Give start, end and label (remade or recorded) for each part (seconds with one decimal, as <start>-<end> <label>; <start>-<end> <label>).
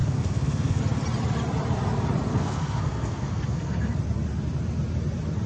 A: 0.0-0.8 remade; 0.8-2.3 recorded; 2.3-4.0 remade; 4.0-5.5 recorded